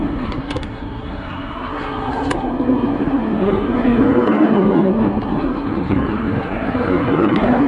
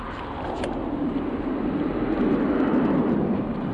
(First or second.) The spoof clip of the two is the first